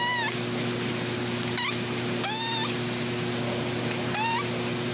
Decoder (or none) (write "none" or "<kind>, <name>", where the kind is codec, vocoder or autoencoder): none